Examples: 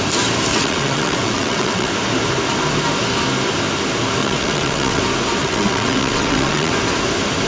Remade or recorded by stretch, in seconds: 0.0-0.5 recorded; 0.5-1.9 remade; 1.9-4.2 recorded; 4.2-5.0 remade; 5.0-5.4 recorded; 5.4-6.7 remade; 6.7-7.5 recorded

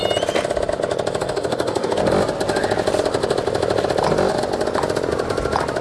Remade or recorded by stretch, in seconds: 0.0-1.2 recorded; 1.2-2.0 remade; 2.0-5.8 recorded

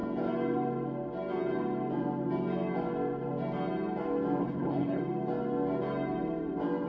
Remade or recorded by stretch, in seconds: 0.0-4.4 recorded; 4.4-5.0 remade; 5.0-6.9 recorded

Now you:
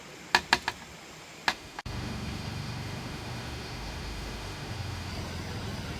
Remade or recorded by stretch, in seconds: 0.0-1.5 recorded; 1.5-5.1 remade; 5.1-6.0 recorded

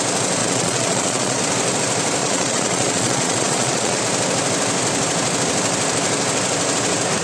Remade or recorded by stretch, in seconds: 0.0-0.4 recorded; 0.4-1.4 remade; 1.4-2.2 recorded; 2.2-4.0 remade; 4.0-7.2 recorded

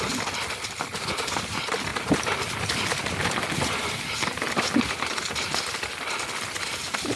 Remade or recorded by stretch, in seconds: 0.0-1.9 recorded; 1.9-4.7 remade; 4.7-7.2 recorded

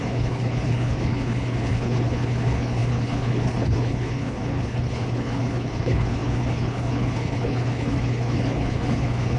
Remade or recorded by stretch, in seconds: 0.0-9.4 remade

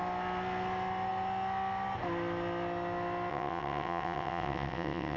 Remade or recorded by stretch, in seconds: 0.0-3.3 recorded; 3.3-5.2 remade